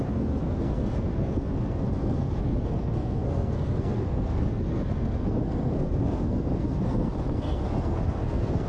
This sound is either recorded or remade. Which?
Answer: remade